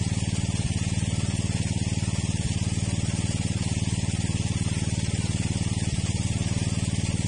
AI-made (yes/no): no